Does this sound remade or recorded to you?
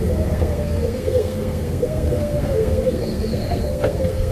remade